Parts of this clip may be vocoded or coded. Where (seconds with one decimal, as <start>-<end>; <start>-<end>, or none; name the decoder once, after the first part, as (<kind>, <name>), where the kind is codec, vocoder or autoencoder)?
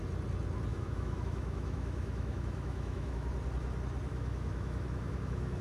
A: 0.7-3.3 (autoencoder, DAC-VAE); 4.1-5.6